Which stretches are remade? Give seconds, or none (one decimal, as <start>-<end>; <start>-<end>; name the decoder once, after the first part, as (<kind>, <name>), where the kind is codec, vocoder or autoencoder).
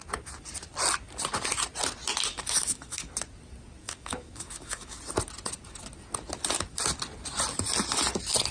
2.3-3.1 (autoencoder, DAC-VAE); 3.8-5.0